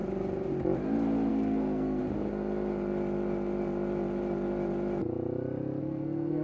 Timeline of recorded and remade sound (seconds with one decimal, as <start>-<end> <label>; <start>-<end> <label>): 0.0-1.3 recorded; 1.3-2.0 remade; 2.0-5.8 recorded; 5.8-6.4 remade